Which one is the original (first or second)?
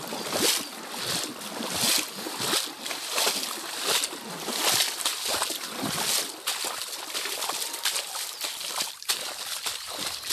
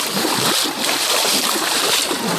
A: first